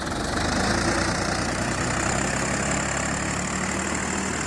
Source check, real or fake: real